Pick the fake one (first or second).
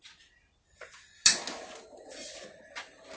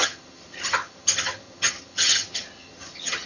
second